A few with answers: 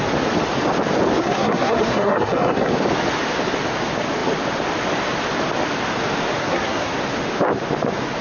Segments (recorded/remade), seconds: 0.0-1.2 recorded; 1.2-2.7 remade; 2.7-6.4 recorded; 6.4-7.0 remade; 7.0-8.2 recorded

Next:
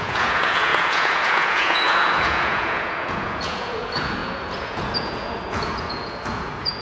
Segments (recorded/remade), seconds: 0.0-6.8 remade